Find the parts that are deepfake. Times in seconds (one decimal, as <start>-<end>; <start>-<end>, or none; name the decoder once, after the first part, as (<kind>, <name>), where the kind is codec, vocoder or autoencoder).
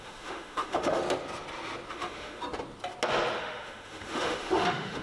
0.0-1.0 (autoencoder, DAC-VAE); 1.9-2.4; 3.4-5.0